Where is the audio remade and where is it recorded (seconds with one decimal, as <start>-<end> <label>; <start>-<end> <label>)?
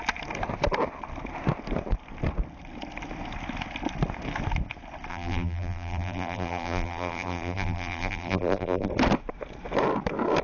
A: 0.0-5.1 recorded; 5.1-8.9 remade; 8.9-10.4 recorded